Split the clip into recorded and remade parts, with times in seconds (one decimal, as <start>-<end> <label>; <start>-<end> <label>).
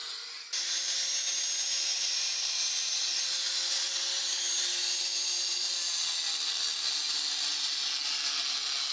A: 0.0-8.9 recorded